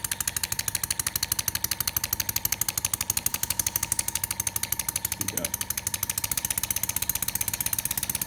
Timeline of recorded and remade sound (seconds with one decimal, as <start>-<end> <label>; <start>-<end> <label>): 0.0-3.3 recorded; 3.3-4.2 remade; 4.2-8.3 recorded